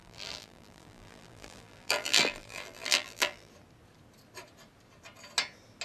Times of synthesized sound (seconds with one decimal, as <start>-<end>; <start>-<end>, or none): 0.0-3.5